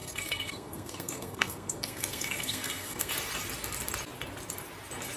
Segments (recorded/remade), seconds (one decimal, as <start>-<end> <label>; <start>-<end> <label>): 0.0-3.1 remade; 3.1-5.2 recorded